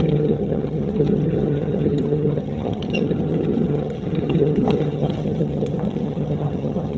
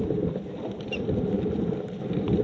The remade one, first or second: first